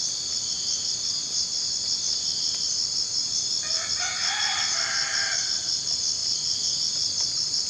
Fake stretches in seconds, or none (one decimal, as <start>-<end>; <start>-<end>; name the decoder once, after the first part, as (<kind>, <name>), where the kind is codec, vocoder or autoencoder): 6.2-7.7 (vocoder, BigVGAN v2)